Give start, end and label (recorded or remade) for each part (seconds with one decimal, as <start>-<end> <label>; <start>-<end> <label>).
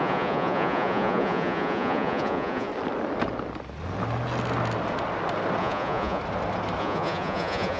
0.0-2.7 remade; 2.7-5.6 recorded; 5.6-6.2 remade; 6.2-6.8 recorded; 6.8-7.8 remade